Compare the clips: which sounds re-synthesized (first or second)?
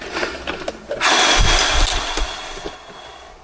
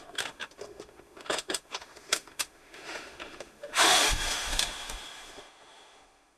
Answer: second